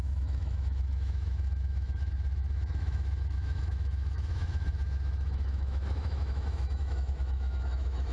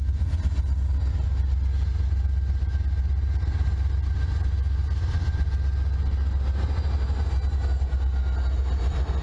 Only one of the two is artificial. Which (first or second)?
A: first